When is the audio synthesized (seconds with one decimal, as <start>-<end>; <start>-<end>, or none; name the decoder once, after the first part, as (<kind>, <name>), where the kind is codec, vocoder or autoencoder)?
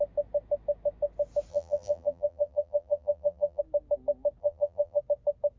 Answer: 1.5-3.6 (vocoder, BigVGAN v2); 4.4-5.0